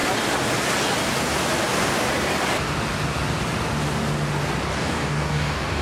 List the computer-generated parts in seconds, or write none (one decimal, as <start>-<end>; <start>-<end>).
4.7-5.8